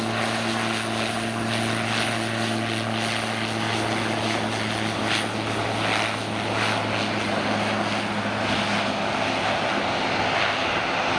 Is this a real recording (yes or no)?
yes